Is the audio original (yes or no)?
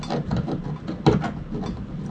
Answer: yes